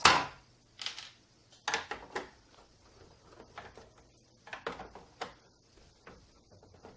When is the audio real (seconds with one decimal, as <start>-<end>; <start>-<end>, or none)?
0.0-7.0